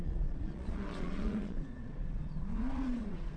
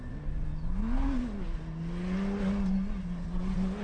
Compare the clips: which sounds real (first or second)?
second